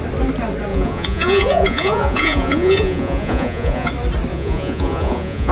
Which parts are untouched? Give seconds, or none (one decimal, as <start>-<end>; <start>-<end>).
0.0-0.7; 3.9-4.3

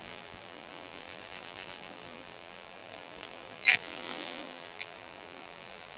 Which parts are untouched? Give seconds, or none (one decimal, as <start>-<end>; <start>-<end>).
none